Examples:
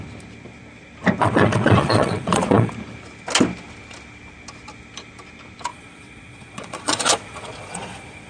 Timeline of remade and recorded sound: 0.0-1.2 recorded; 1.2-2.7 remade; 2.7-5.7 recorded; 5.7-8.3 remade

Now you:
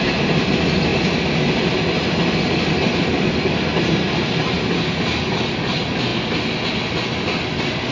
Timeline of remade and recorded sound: 0.0-7.9 recorded

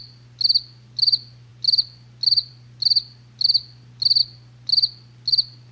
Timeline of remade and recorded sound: 0.0-5.7 recorded

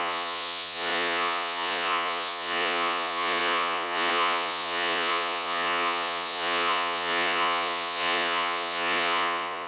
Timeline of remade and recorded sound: 0.0-9.7 remade